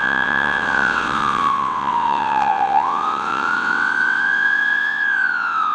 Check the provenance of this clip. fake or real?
fake